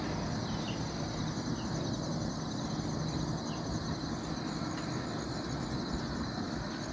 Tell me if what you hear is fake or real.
real